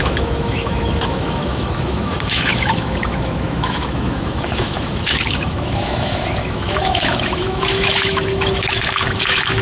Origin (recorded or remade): remade